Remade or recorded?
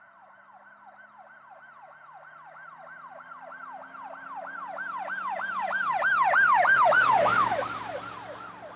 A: recorded